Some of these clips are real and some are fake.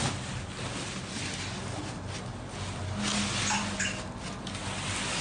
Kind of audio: real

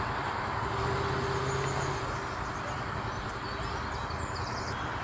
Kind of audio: real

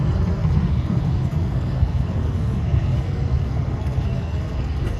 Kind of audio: fake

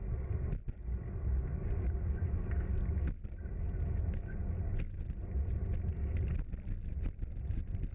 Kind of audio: real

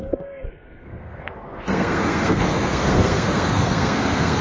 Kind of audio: fake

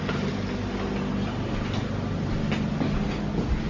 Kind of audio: real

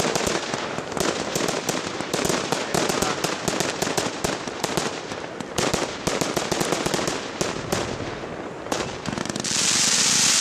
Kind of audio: real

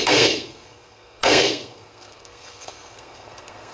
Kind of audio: fake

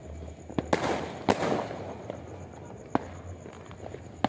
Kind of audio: real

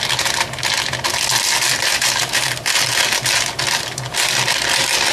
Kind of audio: real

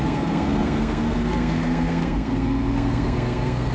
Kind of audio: fake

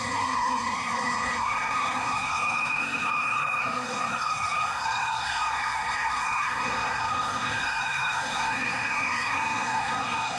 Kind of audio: fake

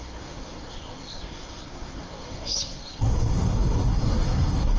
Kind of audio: fake